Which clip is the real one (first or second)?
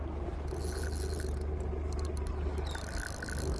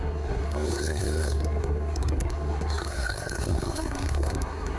first